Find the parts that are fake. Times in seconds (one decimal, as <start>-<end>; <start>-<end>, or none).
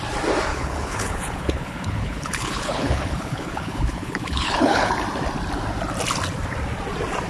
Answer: 0.5-4.9